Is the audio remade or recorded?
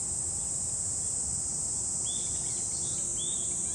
recorded